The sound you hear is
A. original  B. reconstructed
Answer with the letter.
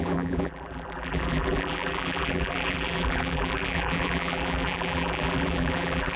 B